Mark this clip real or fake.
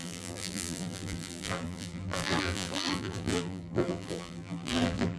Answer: fake